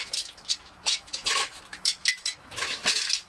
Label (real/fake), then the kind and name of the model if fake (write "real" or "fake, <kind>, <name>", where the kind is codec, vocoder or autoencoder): fake, autoencoder, DAC-VAE